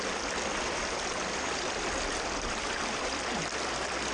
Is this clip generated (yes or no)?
no